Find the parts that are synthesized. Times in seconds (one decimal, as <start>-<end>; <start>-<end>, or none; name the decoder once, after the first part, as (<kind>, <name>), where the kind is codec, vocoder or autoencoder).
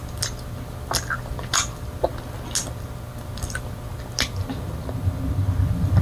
none